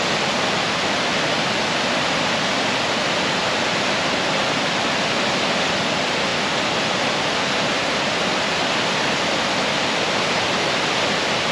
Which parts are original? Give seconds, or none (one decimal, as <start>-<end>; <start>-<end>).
0.0-11.5